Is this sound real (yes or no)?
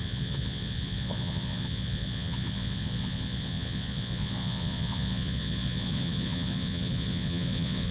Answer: no